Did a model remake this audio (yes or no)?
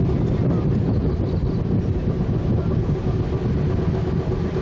no